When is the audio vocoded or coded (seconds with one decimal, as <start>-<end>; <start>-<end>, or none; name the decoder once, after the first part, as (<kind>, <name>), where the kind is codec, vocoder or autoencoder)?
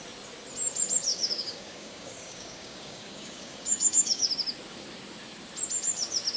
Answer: 1.1-4.3 (codec, DAC)